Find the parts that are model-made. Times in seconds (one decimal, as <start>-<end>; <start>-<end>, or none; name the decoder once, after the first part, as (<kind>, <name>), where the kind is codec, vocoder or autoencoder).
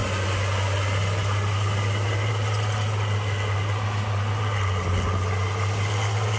none